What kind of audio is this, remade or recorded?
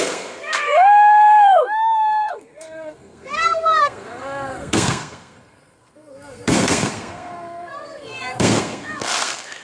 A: remade